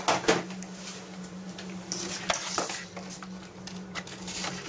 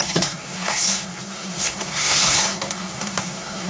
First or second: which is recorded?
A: first